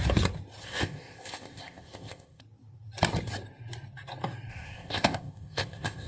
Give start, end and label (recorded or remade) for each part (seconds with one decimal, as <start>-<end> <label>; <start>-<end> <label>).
0.0-0.6 recorded; 0.6-2.4 remade; 2.4-4.5 recorded; 4.5-6.1 remade